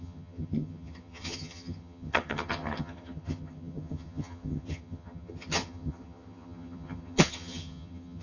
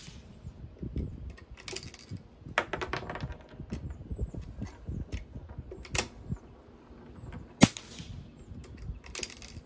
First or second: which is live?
second